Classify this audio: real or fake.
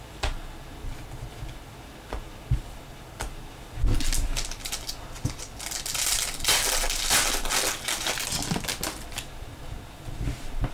real